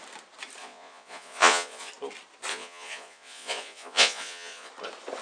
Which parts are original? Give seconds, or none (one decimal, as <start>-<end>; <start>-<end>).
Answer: 0.0-0.6; 1.9-2.5; 4.7-5.2